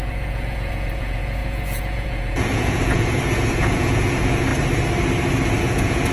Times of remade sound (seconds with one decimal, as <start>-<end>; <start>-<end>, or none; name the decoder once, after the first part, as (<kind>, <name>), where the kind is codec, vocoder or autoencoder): 0.0-4.5 (vocoder, Vocos); 5.6-6.1